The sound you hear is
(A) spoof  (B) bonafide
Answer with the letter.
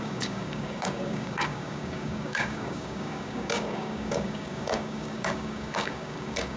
A